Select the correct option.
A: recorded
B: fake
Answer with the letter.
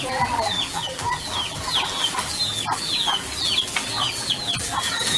B